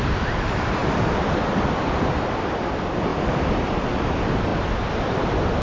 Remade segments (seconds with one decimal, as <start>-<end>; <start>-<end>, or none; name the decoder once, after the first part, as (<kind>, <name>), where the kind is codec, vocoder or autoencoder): 0.0-4.5 (vocoder, BigVGAN v2); 5.1-5.6